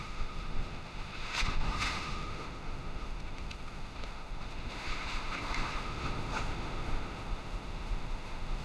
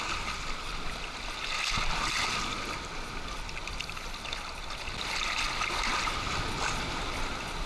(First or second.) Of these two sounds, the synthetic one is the first